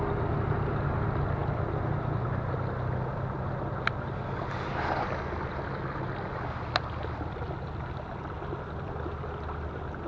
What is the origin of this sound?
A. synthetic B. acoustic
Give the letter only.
B